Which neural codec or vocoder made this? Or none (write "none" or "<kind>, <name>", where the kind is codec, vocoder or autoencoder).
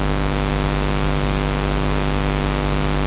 none